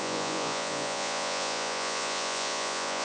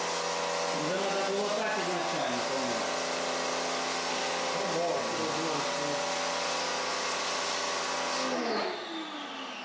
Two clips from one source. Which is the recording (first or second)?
second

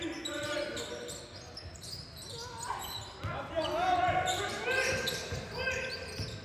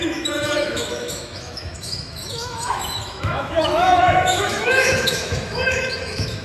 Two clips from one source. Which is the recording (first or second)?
first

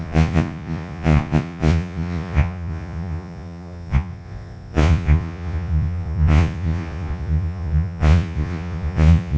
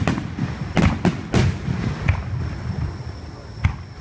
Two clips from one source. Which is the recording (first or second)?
second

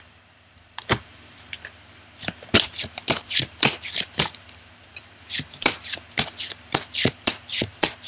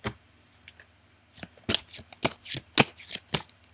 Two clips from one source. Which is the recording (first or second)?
second